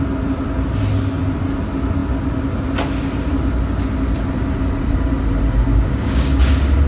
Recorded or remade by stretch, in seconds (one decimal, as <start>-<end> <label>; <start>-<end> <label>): 0.0-5.7 recorded; 5.7-6.5 remade; 6.5-6.9 recorded